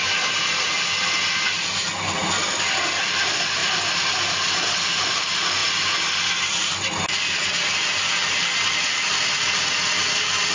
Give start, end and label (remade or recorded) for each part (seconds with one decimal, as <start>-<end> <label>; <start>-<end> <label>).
0.0-10.5 recorded